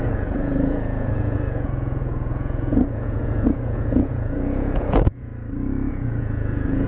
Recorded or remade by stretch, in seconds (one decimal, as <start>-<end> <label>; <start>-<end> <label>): 0.0-5.3 remade; 5.3-5.9 recorded; 5.9-6.9 remade